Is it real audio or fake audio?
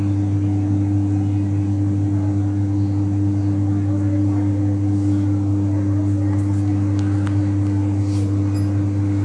real